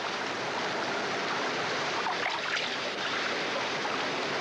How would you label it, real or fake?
real